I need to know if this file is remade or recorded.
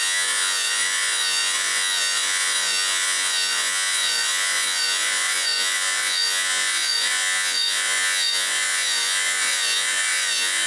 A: remade